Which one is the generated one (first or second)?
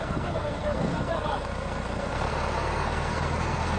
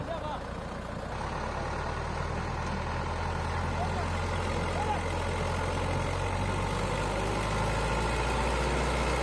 first